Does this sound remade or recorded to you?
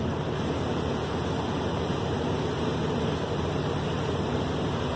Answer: remade